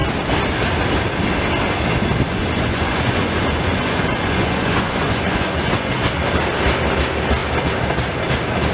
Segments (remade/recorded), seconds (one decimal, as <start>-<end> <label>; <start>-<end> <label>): 0.0-2.3 recorded; 2.3-5.9 remade; 5.9-8.7 recorded